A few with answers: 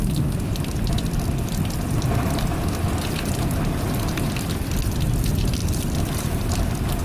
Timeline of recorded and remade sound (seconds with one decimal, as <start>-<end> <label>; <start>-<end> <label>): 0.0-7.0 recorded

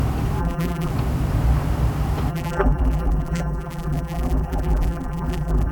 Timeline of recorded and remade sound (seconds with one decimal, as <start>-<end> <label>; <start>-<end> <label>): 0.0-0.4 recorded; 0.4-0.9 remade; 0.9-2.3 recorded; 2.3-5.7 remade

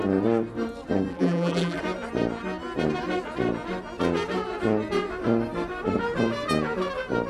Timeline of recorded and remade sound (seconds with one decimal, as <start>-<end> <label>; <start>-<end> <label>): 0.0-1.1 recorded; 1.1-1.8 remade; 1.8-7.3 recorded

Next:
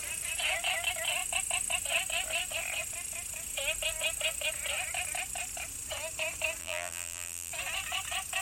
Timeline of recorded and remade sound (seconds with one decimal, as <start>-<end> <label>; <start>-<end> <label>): 0.0-6.6 recorded; 6.6-7.5 remade; 7.5-8.4 recorded